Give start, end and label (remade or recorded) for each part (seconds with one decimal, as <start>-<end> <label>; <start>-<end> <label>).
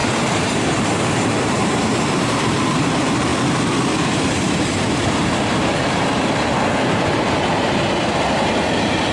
0.0-3.3 remade; 3.3-4.0 recorded; 4.0-9.1 remade